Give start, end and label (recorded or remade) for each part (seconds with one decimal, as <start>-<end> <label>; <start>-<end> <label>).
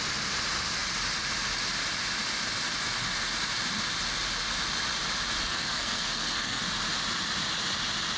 0.0-5.5 recorded; 5.5-6.6 remade; 6.6-8.2 recorded